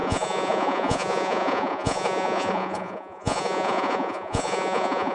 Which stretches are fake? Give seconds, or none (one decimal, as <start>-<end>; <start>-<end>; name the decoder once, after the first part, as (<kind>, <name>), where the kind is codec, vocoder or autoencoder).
0.0-5.1 (vocoder, Vocos)